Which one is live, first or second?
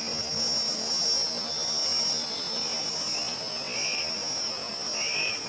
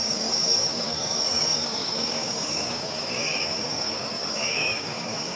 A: first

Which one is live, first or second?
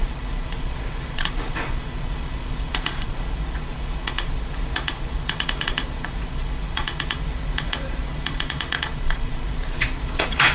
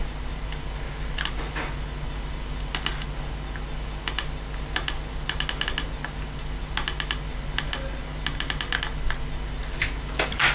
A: second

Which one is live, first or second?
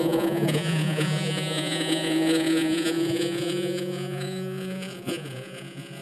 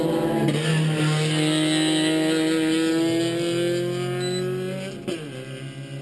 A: second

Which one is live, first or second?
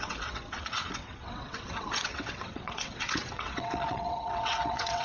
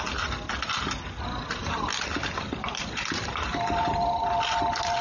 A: second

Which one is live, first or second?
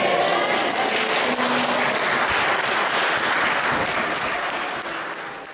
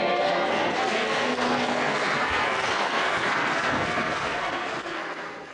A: first